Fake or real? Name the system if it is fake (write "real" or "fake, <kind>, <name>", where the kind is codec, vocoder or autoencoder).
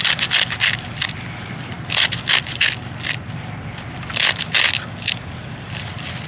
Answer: real